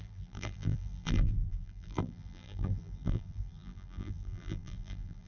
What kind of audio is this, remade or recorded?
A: remade